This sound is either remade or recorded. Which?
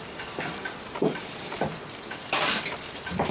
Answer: remade